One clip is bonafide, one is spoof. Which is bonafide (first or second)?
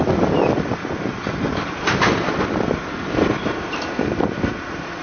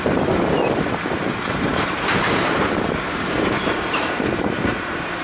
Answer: first